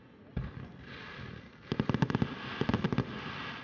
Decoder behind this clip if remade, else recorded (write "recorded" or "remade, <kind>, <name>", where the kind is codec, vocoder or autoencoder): recorded